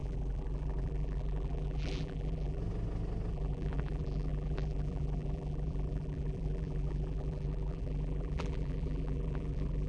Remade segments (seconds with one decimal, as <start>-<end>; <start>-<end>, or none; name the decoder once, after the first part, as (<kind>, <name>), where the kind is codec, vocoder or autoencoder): 0.0-2.6 (vocoder, BigVGAN v2); 3.3-9.9